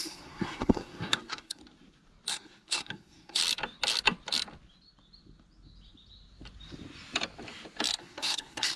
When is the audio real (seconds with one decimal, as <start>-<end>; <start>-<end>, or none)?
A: 1.6-2.3; 3.4-8.0